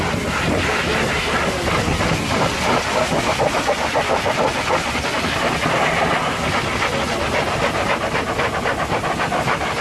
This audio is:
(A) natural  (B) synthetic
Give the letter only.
A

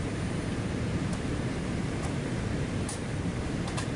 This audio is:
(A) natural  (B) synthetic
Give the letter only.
B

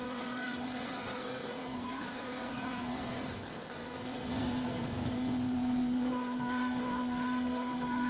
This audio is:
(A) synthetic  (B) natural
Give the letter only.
A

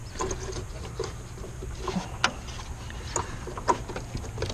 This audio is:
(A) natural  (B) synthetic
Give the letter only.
A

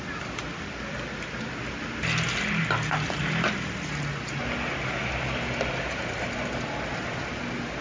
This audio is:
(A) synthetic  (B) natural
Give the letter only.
B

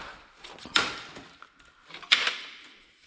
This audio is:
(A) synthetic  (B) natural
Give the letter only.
B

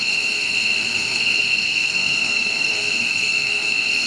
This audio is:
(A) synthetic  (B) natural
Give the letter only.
A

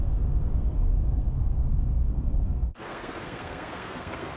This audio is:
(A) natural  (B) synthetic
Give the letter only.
B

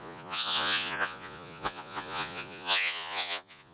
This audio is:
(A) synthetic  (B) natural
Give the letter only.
A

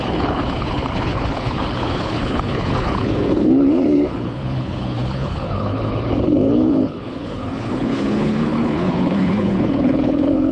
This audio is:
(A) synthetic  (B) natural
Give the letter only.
A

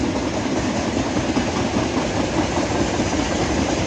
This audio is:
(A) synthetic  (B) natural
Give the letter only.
B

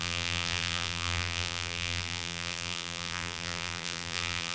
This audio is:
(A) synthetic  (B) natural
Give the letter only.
A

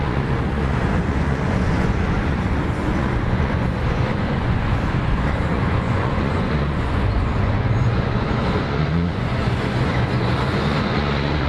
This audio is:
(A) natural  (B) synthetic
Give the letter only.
B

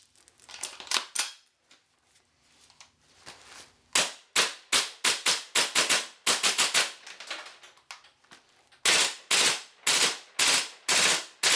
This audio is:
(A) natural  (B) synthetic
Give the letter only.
A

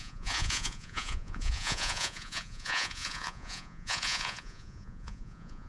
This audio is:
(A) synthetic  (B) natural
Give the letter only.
A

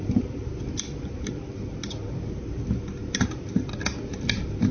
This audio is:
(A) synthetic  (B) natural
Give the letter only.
B